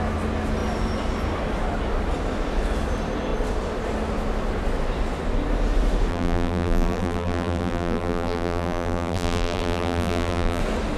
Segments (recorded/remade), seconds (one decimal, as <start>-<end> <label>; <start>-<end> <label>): 0.0-6.1 recorded; 6.1-10.6 remade; 10.6-11.0 recorded